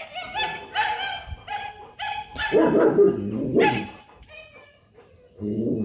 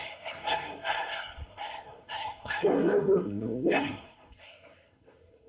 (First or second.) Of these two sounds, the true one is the first